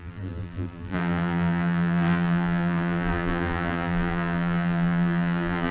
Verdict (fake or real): fake